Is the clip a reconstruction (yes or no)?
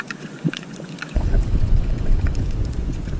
yes